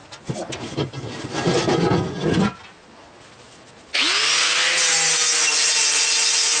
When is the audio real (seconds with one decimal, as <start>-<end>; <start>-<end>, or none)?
0.0-0.6; 1.6-5.6